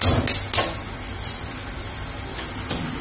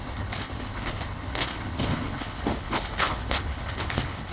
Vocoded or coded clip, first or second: second